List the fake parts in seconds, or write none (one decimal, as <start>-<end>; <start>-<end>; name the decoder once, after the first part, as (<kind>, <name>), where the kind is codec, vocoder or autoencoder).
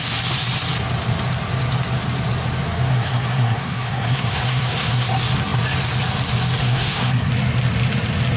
2.9-5.1 (codec, SNAC); 6.6-7.3